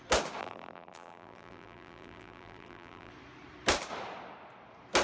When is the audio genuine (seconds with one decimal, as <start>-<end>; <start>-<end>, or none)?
0.0-0.4; 3.1-5.0